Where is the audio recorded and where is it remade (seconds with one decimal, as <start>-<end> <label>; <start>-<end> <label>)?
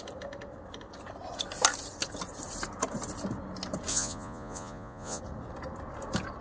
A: 0.0-3.9 recorded; 3.9-5.2 remade; 5.2-6.4 recorded